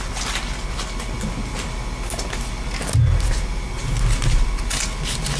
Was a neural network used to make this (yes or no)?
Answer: no